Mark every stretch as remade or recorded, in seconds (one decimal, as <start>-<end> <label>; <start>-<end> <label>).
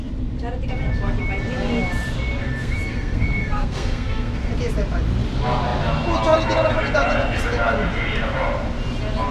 0.0-2.4 recorded; 2.4-4.5 remade; 4.5-9.3 recorded